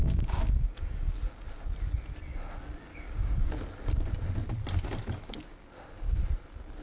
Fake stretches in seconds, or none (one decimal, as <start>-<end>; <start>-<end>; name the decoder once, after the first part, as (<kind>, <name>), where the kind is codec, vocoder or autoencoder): 0.0-1.1 (codec, DAC); 2.9-3.5